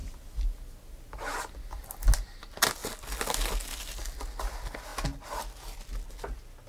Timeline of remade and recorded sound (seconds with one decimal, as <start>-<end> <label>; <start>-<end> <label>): 0.0-6.7 recorded